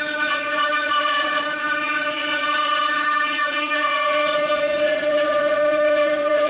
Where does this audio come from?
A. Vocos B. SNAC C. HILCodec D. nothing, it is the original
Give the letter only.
A